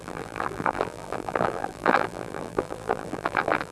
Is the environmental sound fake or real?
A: fake